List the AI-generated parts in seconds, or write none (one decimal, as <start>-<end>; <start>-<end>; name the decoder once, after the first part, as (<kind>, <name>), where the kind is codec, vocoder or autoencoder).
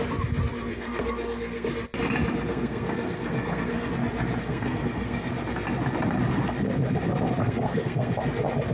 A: 0.7-1.7 (codec, SNAC); 2.5-3.9; 4.4-5.3; 7.4-8.2